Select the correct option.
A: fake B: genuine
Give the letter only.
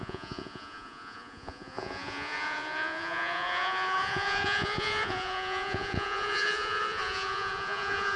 A